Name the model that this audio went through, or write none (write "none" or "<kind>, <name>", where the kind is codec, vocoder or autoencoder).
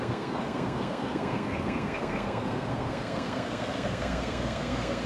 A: codec, SNAC